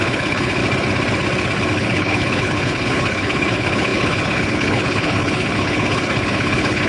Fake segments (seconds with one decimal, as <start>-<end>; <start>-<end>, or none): 0.0-0.6; 1.7-6.9